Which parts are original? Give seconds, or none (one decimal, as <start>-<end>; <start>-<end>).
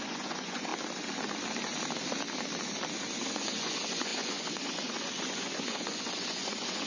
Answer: 0.7-3.3